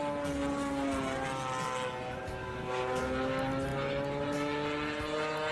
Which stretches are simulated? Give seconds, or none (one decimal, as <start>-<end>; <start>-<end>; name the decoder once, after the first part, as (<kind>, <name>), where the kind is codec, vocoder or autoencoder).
2.4-3.0 (codec, DAC)